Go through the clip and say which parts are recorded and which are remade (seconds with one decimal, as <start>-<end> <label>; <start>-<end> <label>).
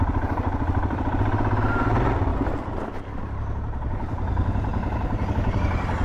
0.0-6.0 recorded